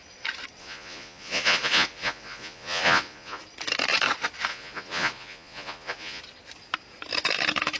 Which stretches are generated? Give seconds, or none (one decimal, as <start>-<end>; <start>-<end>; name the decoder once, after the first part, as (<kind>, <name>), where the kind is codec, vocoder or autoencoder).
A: 0.6-3.4 (vocoder, Vocos); 4.5-6.2